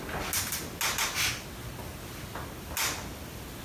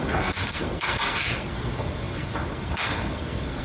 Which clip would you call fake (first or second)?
second